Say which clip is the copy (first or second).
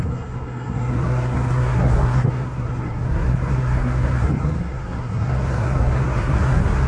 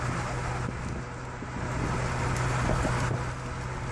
first